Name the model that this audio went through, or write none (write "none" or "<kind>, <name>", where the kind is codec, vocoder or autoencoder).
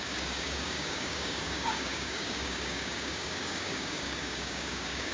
codec, DAC